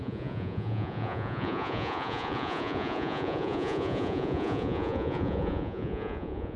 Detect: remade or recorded remade